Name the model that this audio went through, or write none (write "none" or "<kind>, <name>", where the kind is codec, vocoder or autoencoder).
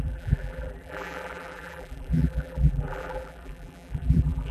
vocoder, BigVGAN v2